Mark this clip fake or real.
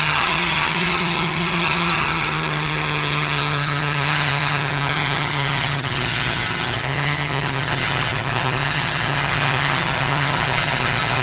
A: fake